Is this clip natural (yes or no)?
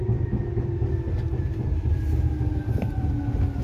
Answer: yes